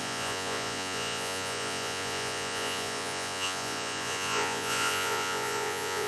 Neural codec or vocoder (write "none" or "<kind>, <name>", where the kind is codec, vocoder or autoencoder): vocoder, Vocos